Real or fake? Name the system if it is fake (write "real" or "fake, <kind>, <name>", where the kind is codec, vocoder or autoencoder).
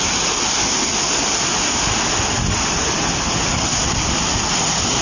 real